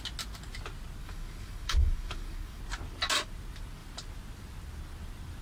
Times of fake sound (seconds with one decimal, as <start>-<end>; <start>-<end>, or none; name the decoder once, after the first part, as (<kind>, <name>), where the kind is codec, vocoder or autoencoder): 1.0-2.6 (codec, DAC)